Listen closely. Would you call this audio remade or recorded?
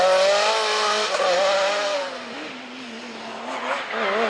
recorded